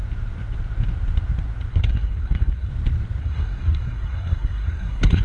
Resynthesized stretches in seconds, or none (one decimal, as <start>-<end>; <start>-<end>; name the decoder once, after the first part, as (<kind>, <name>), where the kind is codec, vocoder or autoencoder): 1.7-2.7 (codec, SNAC); 3.2-5.2